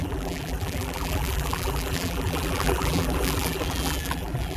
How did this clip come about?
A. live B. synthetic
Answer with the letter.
B